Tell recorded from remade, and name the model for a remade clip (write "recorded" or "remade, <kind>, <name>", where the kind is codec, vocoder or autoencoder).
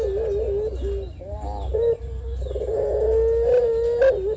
recorded